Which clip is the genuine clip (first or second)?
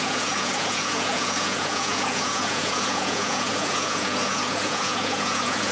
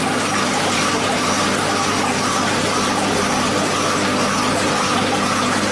second